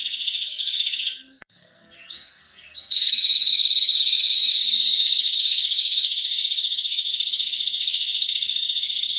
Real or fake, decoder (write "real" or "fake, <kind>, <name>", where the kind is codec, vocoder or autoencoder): fake, codec, SNAC